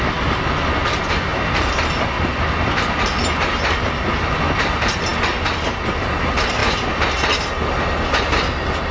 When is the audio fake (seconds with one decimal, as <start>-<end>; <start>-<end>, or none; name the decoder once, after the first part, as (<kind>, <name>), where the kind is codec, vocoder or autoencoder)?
none